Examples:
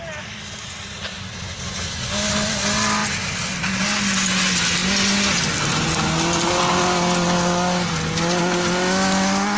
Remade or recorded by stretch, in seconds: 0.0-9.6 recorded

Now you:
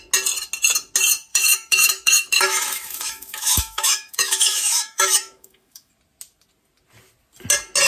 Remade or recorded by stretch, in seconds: 0.0-1.3 recorded; 1.3-5.9 remade; 5.9-7.9 recorded

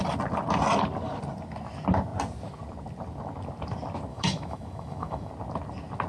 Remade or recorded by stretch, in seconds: 0.0-4.1 recorded; 4.1-5.3 remade; 5.3-6.1 recorded

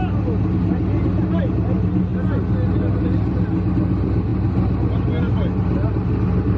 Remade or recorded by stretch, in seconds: 0.0-6.6 recorded

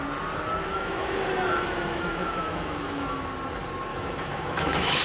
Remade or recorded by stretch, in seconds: 0.0-0.7 recorded; 0.7-3.2 remade; 3.2-3.9 recorded; 3.9-5.0 remade

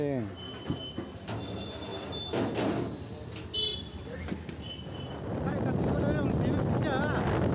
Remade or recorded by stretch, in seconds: 0.0-7.5 recorded